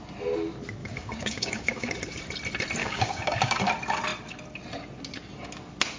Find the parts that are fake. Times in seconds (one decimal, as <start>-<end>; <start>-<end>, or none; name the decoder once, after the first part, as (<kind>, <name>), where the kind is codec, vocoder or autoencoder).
0.8-1.9 (codec, DAC); 2.8-3.6